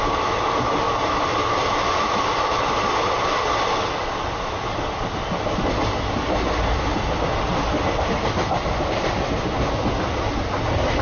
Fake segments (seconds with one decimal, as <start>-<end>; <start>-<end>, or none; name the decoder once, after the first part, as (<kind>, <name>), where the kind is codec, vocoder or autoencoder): none

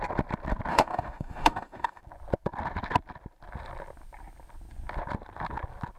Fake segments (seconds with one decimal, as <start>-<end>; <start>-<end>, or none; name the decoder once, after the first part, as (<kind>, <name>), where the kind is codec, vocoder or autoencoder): 0.7-2.0 (autoencoder, DAC-VAE)